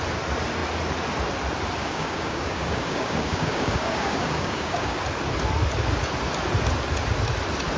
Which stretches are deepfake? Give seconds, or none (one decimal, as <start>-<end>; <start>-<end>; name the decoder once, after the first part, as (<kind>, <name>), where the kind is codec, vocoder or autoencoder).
1.8-5.0 (codec, DAC)